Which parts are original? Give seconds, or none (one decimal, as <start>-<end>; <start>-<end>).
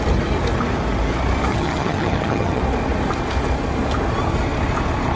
0.0-1.5; 2.6-5.2